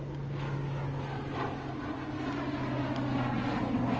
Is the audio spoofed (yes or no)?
no